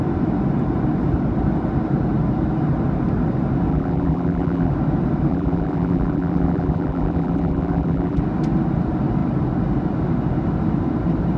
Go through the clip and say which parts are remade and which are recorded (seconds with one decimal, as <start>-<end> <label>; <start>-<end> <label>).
0.0-3.7 recorded; 3.7-4.7 remade; 4.7-5.3 recorded; 5.3-8.2 remade; 8.2-11.4 recorded